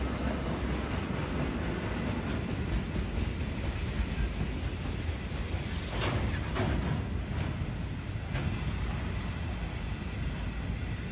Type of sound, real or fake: real